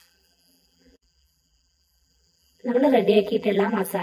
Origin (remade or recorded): remade